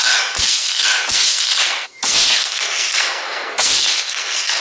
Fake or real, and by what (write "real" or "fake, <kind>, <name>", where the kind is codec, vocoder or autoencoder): fake, codec, SNAC